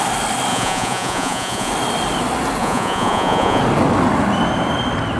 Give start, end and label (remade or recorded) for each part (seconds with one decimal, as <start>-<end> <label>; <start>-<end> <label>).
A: 0.0-0.5 recorded; 0.5-1.7 remade; 1.7-2.6 recorded; 2.6-3.6 remade; 3.6-5.2 recorded